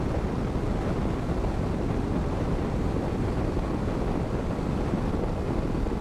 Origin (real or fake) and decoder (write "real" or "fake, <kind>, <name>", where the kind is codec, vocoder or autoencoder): real